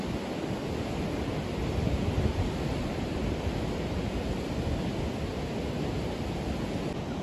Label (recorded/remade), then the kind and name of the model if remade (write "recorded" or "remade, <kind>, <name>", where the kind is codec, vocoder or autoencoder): recorded